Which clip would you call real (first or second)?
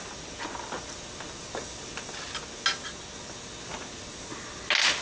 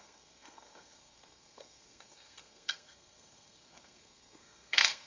first